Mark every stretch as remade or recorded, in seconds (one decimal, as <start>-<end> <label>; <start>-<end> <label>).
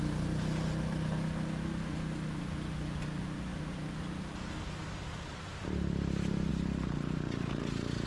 0.0-8.1 recorded